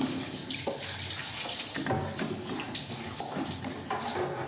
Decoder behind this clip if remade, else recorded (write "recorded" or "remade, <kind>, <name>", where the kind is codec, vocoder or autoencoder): recorded